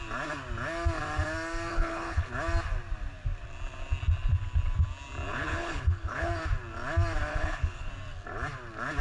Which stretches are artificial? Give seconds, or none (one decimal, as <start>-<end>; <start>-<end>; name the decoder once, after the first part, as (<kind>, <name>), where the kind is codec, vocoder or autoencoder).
1.7-2.3 (codec, HILCodec); 5.3-6.3; 7.3-7.9